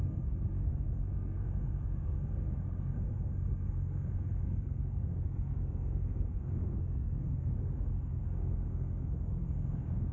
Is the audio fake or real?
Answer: fake